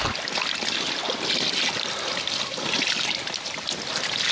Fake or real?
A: real